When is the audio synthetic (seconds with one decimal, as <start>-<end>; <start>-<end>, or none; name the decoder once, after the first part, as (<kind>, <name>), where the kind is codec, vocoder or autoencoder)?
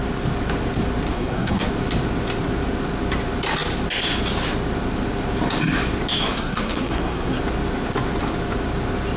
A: 1.1-1.7 (codec, SNAC); 6.1-7.4